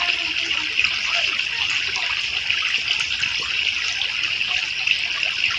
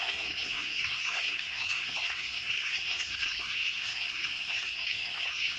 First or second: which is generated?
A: second